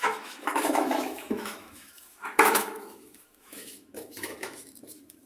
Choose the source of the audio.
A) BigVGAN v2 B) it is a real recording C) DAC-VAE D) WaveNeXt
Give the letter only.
C